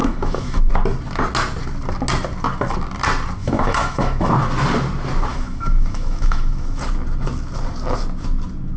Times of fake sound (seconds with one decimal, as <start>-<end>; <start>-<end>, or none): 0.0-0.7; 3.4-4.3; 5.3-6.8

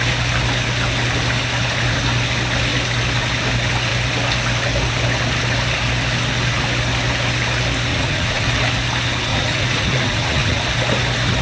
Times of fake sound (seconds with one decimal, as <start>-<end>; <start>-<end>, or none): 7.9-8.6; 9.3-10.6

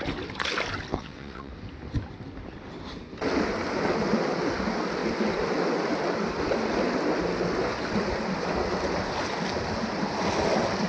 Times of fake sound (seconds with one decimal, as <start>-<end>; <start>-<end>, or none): 0.9-1.5

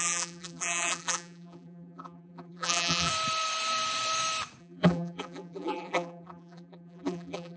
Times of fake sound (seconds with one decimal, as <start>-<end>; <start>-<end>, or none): 0.0-3.1; 4.6-7.6

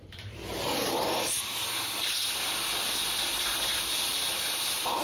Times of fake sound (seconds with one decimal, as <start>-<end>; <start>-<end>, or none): 0.0-0.5; 3.5-5.0